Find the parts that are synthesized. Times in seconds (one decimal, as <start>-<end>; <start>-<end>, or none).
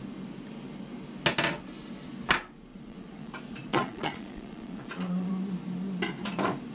2.7-3.3; 3.7-5.3